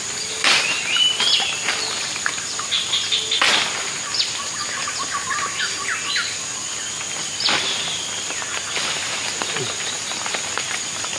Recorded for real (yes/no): yes